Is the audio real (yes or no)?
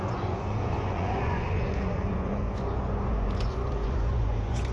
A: no